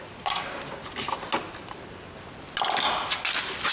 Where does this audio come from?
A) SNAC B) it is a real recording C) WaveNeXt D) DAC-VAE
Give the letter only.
B